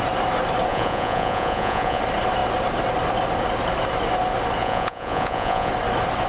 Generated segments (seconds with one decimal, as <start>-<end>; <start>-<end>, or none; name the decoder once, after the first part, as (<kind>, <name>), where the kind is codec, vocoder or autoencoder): 0.7-2.0 (vocoder, Vocos); 4.6-5.7